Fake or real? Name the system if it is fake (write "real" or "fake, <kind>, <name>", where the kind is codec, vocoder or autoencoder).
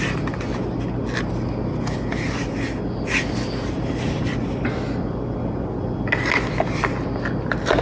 real